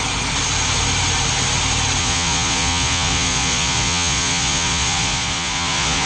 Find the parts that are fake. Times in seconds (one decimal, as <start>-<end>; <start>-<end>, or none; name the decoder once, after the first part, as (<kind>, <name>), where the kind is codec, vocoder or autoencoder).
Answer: 2.0-6.1 (vocoder, Vocos)